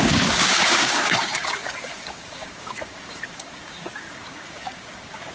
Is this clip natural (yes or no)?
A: no